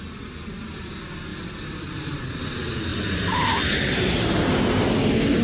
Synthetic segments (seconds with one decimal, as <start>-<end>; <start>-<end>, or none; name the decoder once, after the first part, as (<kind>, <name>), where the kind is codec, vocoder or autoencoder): none